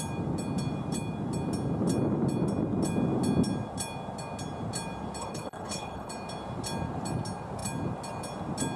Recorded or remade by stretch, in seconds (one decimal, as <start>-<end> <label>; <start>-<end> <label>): 0.0-5.2 recorded; 5.2-6.1 remade; 6.1-8.8 recorded